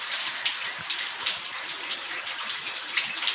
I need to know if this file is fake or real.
fake